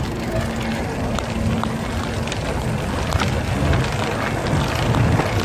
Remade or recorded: recorded